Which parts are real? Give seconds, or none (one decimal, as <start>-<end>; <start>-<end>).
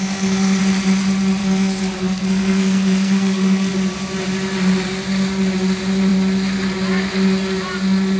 0.6-1.4; 3.7-8.2